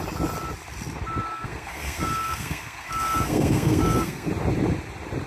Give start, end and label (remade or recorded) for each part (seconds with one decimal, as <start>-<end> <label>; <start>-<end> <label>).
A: 0.0-1.3 recorded; 1.3-4.3 remade; 4.3-5.3 recorded